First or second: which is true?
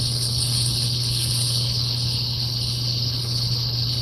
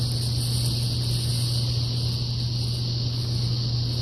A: second